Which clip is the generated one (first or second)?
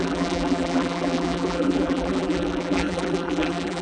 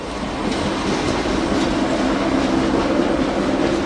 first